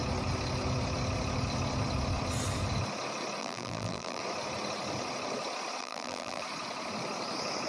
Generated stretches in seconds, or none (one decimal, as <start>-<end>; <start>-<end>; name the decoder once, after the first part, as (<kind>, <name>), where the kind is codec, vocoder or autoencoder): 3.4-4.2 (vocoder, BigVGAN v2); 5.8-6.4